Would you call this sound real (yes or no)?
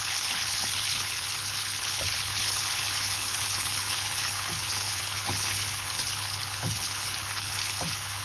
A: no